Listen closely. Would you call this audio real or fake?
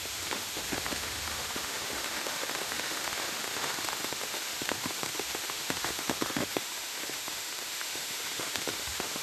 fake